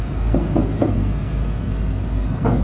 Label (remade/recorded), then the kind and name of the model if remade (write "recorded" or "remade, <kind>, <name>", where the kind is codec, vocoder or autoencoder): remade, codec, SNAC